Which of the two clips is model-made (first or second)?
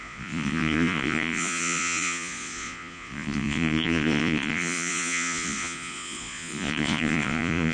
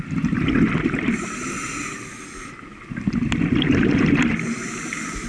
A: first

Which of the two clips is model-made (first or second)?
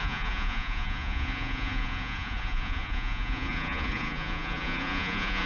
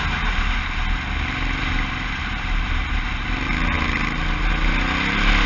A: first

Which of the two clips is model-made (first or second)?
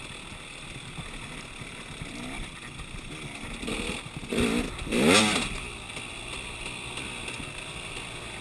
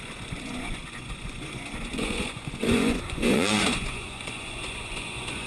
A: second